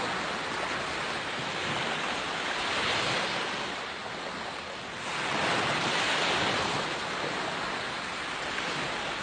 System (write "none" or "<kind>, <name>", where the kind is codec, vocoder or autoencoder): none